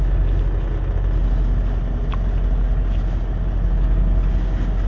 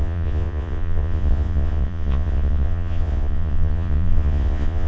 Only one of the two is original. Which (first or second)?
first